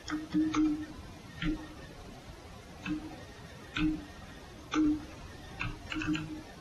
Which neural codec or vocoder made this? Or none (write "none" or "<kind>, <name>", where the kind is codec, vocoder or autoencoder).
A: vocoder, BigVGAN v2